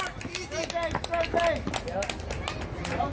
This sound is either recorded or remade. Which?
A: recorded